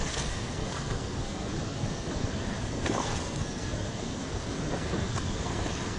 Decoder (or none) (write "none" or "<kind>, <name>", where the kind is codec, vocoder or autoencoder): codec, SNAC